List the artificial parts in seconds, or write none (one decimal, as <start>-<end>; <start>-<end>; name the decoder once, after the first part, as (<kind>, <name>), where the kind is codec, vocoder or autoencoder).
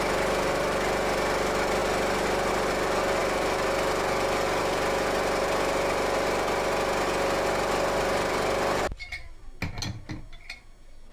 none